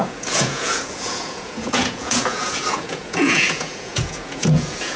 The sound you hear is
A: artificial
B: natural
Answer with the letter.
A